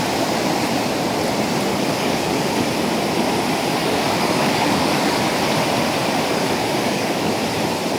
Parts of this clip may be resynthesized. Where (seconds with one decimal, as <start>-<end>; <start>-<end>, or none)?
1.7-2.4; 3.8-5.2; 6.3-7.3